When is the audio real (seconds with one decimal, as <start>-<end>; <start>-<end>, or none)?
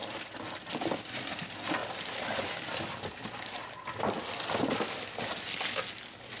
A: 0.5-1.8; 4.7-6.4